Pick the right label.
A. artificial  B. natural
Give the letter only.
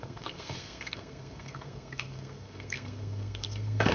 A